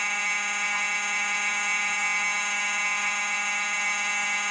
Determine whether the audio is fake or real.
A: fake